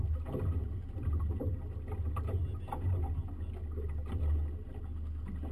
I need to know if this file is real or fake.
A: real